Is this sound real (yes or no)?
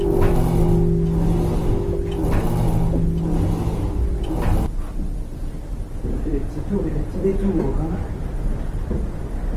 yes